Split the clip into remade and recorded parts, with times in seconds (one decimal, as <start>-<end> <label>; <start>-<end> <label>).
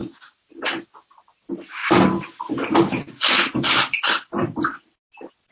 0.0-5.5 recorded